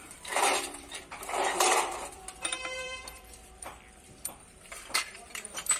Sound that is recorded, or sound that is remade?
remade